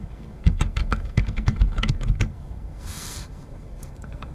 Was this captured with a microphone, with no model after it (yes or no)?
no